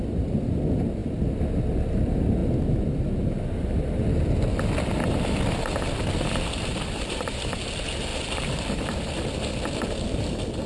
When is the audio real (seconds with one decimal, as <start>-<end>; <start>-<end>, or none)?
0.0-6.7; 7.6-8.1; 9.2-10.7